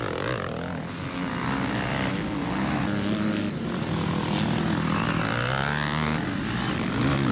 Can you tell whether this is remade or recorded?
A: recorded